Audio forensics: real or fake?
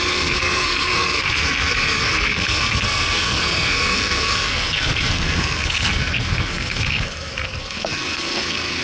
fake